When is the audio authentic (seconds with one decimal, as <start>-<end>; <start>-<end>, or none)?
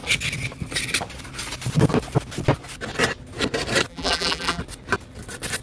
0.0-3.9; 4.6-5.6